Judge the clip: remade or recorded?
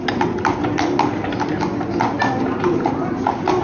recorded